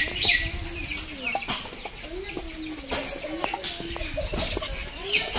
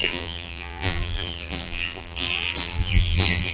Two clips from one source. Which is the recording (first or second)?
first